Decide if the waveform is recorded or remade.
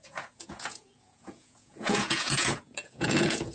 remade